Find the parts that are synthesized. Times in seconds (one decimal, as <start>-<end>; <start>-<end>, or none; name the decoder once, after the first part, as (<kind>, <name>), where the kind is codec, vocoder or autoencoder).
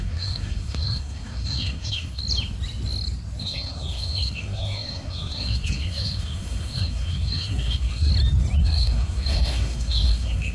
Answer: 0.0-2.2 (codec, SNAC); 3.4-8.1; 8.6-10.5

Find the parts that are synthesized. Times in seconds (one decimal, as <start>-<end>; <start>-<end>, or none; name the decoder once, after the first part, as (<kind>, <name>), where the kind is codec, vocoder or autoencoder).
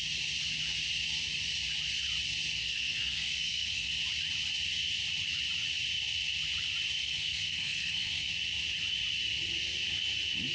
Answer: 2.6-4.0 (codec, SNAC); 7.0-8.3